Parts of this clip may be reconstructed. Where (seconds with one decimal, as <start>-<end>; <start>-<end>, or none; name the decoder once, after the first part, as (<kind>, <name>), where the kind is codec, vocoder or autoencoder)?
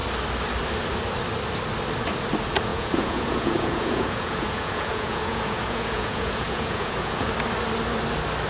2.7-7.3 (vocoder, Vocos)